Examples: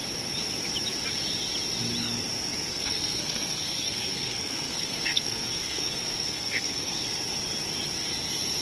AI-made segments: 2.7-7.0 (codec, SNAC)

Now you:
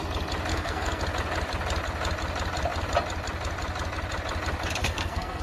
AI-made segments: 0.5-1.0 (codec, SNAC); 4.8-5.4

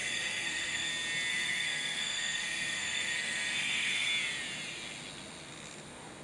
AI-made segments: 0.0-0.9 (codec, SNAC); 1.3-4.1

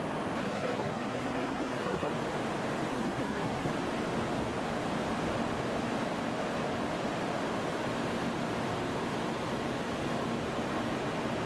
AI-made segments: 0.4-2.1 (codec, SNAC); 2.9-3.7

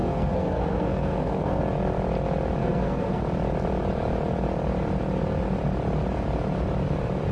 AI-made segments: 0.0-1.6 (codec, SNAC); 2.6-3.2

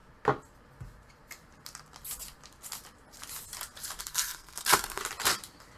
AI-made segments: 4.0-5.0 (codec, SNAC)

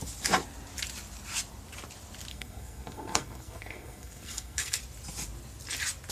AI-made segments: 2.3-4.8 (codec, SNAC)

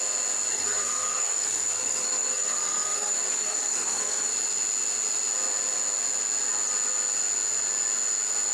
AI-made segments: 0.5-4.3 (codec, SNAC)